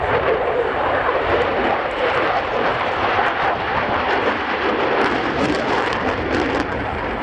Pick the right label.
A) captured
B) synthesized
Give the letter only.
B